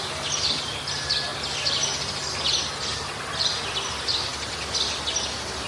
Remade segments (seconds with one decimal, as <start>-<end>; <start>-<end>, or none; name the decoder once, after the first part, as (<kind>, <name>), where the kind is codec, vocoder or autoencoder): 0.0-1.3 (vocoder, BigVGAN v2); 3.2-4.3; 5.3-5.7